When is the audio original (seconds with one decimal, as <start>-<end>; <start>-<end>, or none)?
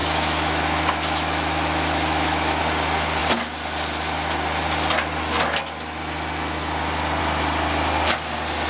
2.6-8.7